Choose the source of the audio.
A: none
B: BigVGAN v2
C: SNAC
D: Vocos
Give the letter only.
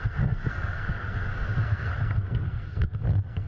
C